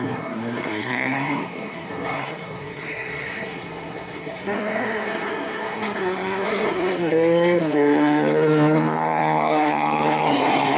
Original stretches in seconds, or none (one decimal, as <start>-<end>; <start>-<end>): none

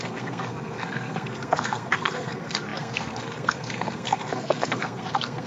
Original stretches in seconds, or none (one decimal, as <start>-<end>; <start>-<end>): none